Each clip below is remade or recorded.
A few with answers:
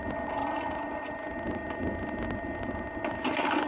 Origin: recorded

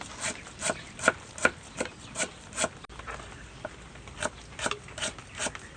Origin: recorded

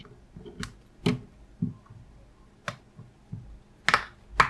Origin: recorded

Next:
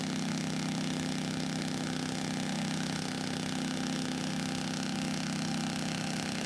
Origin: remade